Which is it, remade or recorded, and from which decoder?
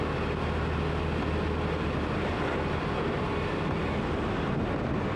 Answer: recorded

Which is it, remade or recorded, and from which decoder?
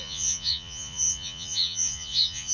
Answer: remade, vocoder, Vocos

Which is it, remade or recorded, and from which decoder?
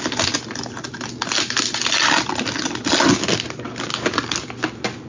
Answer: recorded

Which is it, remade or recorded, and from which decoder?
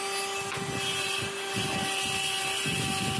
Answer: recorded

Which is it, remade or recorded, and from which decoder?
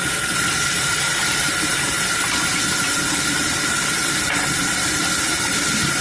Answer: recorded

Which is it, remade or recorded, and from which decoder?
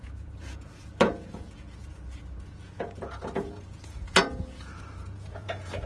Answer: remade, vocoder, Vocos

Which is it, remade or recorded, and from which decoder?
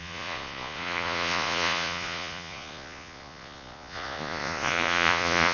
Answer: remade, vocoder, Vocos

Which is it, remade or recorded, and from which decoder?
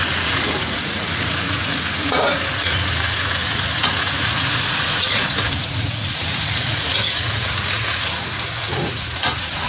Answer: remade, vocoder, Vocos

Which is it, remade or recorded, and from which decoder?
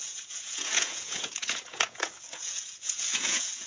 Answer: remade, vocoder, Vocos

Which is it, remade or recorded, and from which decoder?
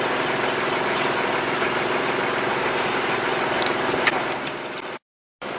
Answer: recorded